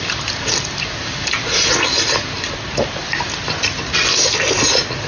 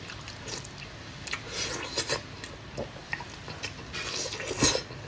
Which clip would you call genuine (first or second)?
second